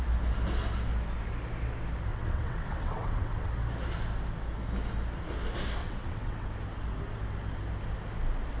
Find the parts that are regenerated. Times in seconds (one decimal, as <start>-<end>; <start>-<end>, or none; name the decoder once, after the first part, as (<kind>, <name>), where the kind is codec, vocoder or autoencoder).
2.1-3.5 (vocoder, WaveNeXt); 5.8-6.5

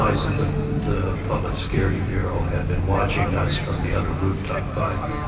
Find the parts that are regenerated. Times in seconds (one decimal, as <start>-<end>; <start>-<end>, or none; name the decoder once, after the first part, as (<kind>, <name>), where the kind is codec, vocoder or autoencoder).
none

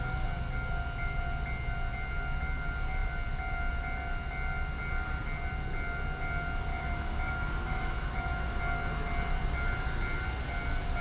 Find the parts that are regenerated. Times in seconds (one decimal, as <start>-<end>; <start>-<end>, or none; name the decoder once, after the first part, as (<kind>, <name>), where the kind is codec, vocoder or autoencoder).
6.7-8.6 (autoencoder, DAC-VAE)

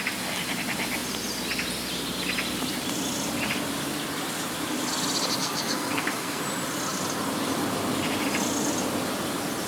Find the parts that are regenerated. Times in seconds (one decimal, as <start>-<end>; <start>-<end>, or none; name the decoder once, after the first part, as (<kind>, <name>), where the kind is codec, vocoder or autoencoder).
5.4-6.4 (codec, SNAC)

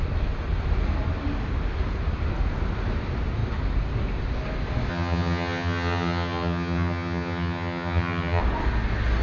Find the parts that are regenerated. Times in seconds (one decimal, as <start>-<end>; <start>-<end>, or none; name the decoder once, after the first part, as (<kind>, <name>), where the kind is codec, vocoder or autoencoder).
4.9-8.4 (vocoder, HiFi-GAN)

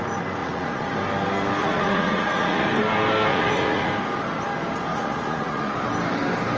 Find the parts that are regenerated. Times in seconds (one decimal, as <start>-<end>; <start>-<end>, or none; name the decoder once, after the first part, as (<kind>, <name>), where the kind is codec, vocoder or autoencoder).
0.4-0.9 (vocoder, Vocos); 1.6-2.8; 3.3-3.9; 4.9-5.9